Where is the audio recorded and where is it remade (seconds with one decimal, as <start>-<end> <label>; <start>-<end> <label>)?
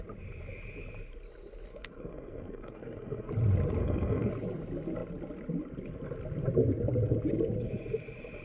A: 0.0-1.7 recorded; 1.7-3.3 remade; 3.3-3.8 recorded; 3.8-4.3 remade; 4.3-8.4 recorded